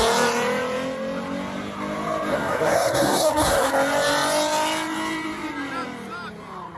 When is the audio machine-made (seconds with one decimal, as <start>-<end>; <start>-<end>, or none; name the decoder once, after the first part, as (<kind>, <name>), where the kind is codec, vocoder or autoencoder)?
2.3-3.7 (codec, SNAC)